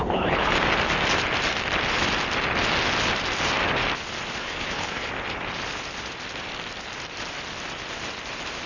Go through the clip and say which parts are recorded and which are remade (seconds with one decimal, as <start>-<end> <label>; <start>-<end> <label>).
0.0-0.5 remade; 0.5-4.4 recorded; 4.4-5.1 remade; 5.1-8.7 recorded